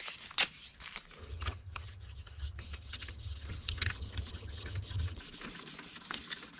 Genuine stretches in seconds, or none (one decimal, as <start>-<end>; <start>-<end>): 0.0-1.2; 5.2-6.6